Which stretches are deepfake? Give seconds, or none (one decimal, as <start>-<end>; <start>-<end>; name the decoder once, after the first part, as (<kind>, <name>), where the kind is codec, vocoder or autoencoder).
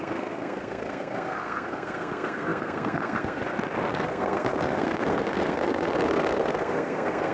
0.0-3.4 (codec, SNAC); 3.9-7.3